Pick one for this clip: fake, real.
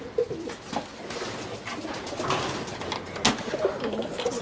real